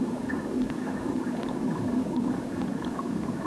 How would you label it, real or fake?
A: fake